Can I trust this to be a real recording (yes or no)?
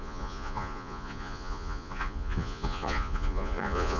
no